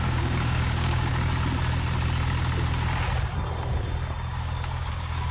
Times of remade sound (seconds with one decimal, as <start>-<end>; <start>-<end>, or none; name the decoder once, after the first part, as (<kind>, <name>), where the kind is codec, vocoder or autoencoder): 0.0-1.1 (codec, DAC); 4.3-5.3